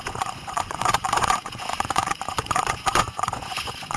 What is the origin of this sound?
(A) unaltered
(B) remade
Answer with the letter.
B